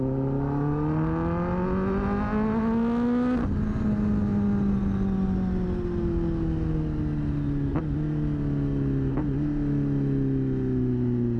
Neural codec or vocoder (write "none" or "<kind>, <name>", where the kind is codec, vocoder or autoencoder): none